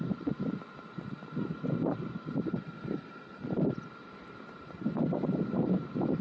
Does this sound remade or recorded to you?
remade